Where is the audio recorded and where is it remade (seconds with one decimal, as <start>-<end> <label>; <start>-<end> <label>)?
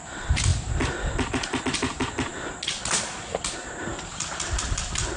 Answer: 0.0-5.2 recorded